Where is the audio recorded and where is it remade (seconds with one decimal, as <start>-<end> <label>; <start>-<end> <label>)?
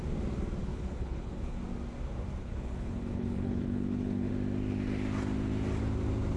0.0-0.7 recorded; 0.7-1.6 remade; 1.6-2.4 recorded; 2.4-4.3 remade; 4.3-6.4 recorded